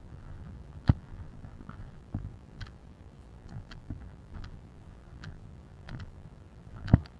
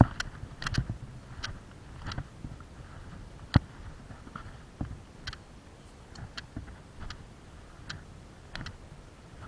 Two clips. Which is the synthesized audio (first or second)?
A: first